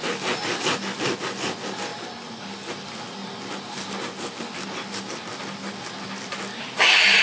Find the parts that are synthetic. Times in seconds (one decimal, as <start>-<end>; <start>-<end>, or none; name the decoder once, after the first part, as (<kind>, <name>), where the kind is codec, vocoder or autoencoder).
none